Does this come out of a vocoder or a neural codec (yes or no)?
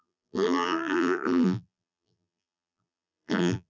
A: yes